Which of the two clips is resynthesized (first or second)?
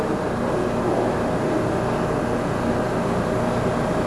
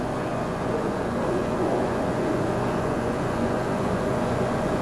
second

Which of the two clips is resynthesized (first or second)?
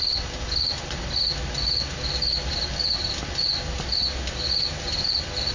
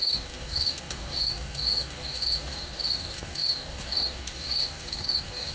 second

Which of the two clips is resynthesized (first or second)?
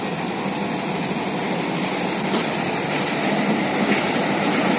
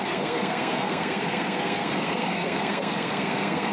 second